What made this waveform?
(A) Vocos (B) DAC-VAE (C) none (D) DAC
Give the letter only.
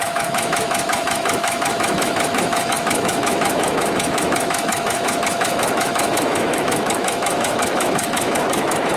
B